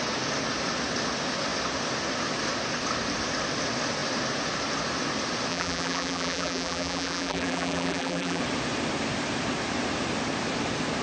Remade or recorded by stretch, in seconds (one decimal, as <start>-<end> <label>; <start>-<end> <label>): 0.0-5.5 recorded; 5.5-8.4 remade; 8.4-11.0 recorded